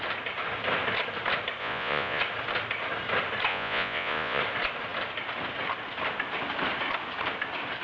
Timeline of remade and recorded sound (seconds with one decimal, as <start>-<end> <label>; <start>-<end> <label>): 0.0-1.6 recorded; 1.6-2.2 remade; 2.2-3.5 recorded; 3.5-4.4 remade; 4.4-7.8 recorded